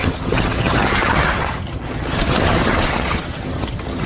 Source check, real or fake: fake